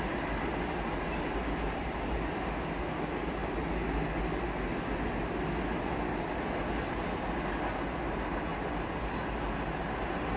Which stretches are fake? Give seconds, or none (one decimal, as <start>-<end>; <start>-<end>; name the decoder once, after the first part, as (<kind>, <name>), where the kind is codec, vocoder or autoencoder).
none